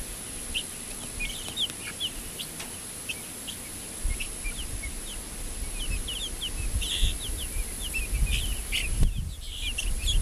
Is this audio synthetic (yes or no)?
no